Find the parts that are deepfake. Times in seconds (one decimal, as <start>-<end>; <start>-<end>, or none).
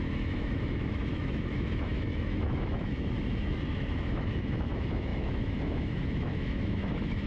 0.0-7.3